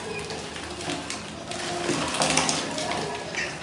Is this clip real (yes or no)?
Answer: yes